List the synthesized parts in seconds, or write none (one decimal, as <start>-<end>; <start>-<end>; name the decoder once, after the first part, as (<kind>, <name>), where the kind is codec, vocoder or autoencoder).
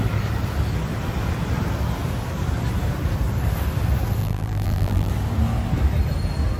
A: 4.2-5.1 (vocoder, BigVGAN v2)